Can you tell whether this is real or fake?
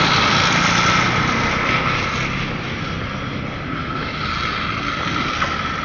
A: real